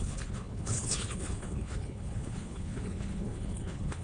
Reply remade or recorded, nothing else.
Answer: remade